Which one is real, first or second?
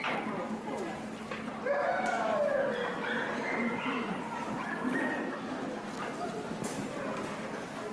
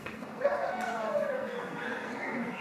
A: first